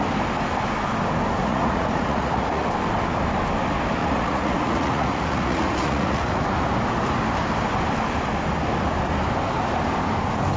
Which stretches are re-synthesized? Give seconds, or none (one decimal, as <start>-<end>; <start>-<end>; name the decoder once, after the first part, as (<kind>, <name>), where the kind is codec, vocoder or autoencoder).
1.4-2.7 (vocoder, Vocos); 4.0-6.4